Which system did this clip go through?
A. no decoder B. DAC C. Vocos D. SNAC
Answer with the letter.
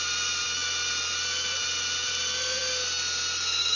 A